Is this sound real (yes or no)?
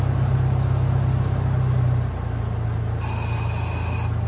yes